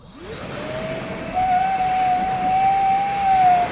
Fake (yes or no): no